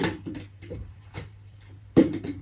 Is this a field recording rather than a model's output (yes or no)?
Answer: no